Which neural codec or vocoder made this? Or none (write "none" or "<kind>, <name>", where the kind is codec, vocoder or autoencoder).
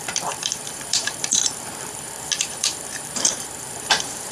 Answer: vocoder, BigVGAN v2